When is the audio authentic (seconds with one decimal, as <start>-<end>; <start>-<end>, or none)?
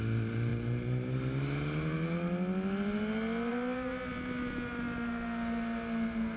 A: 0.0-6.4